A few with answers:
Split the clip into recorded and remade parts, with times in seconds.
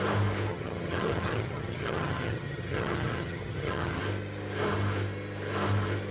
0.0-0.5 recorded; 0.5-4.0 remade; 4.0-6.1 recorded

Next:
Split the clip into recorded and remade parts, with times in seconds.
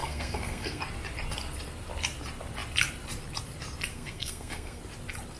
0.0-0.8 remade; 0.8-3.9 recorded; 3.9-4.8 remade; 4.8-5.4 recorded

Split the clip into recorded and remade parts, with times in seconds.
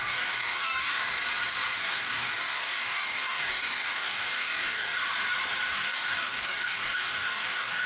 0.0-1.2 remade; 1.2-1.8 recorded; 1.8-5.0 remade; 5.0-5.7 recorded; 5.7-7.9 remade